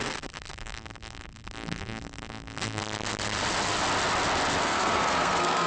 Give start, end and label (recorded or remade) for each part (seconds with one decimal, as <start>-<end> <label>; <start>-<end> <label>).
0.0-2.8 remade; 2.8-4.6 recorded; 4.6-5.7 remade